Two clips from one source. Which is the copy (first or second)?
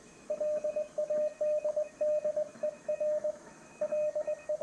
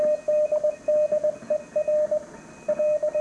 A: first